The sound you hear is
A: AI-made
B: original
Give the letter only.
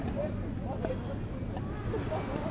B